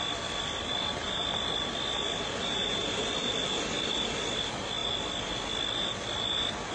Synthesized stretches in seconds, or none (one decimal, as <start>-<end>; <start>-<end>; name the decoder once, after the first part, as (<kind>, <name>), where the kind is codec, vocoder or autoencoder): 2.8-3.8 (vocoder, BigVGAN v2)